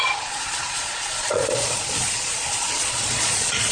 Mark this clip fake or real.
fake